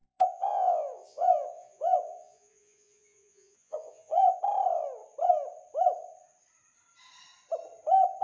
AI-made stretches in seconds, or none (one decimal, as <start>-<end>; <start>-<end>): 0.0-4.4